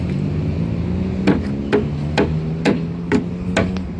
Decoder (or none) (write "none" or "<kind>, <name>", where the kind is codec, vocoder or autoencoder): none